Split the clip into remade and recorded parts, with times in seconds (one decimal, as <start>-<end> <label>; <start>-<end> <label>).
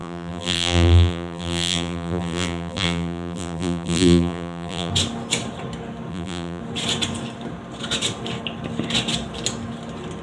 0.0-4.9 remade; 4.9-6.1 recorded; 6.1-6.6 remade; 6.6-10.2 recorded